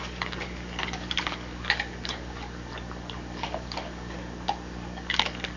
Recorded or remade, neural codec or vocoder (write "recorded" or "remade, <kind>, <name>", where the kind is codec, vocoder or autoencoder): remade, codec, DAC